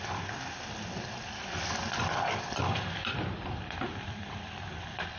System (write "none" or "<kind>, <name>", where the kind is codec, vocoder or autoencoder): vocoder, BigVGAN v2